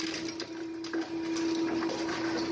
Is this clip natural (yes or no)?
yes